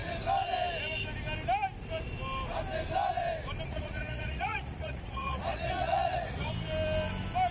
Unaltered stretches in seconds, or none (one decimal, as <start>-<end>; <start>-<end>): 0.0-3.7; 6.5-7.5